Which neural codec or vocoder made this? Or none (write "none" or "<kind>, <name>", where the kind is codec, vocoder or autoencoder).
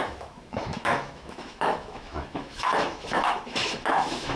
autoencoder, DAC-VAE